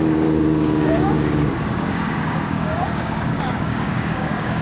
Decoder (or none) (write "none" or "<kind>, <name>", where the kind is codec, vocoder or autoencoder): codec, DAC